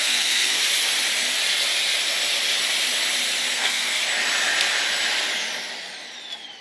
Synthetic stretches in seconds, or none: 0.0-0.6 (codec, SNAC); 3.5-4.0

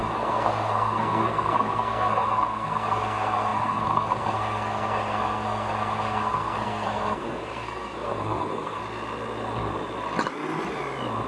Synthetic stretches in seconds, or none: 0.0-8.8 (codec, SNAC)